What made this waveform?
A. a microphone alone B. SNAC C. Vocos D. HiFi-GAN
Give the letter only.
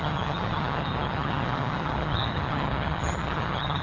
D